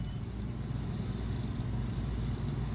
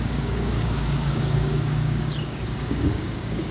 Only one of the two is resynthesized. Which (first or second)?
second